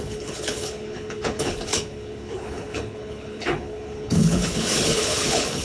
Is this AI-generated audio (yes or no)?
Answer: yes